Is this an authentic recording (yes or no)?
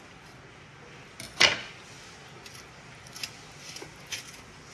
yes